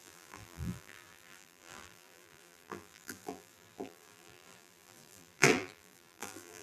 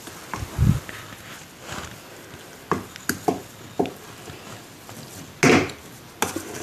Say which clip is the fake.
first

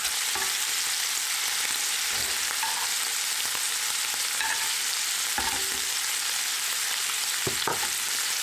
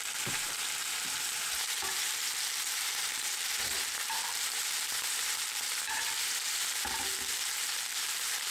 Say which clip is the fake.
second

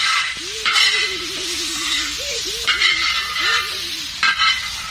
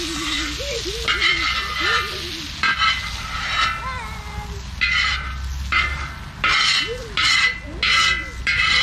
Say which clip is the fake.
first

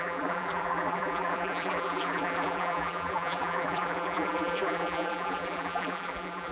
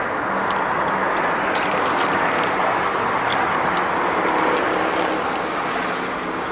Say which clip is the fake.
first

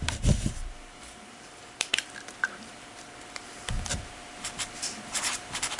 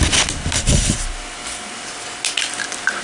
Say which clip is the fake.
first